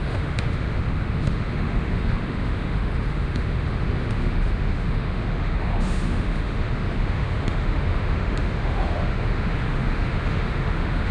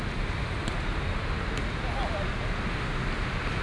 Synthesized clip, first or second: first